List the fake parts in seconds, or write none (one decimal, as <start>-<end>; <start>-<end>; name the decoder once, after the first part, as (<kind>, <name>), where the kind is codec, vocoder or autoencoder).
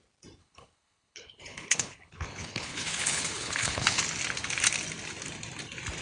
0.4-4.0 (codec, HILCodec)